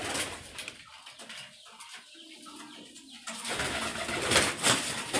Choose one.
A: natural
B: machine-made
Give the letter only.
A